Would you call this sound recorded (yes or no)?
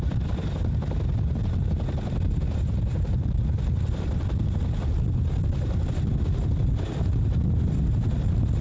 yes